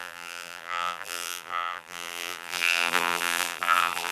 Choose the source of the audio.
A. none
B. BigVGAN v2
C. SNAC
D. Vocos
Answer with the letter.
B